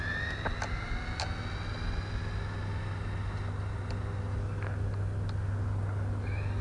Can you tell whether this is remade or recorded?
recorded